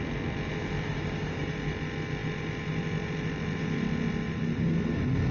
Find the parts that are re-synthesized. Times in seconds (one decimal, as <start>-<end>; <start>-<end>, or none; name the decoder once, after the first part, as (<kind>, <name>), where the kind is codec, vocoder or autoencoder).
0.9-1.5 (codec, DAC)